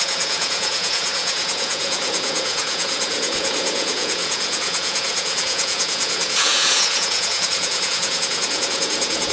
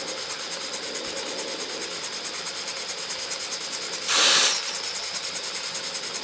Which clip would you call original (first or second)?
second